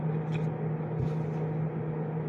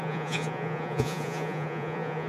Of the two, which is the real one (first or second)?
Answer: first